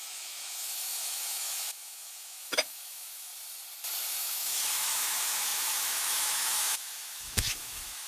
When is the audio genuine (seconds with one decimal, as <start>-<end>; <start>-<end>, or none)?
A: 3.3-4.1